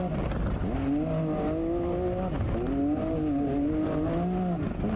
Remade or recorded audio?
recorded